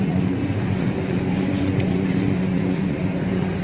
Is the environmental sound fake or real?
fake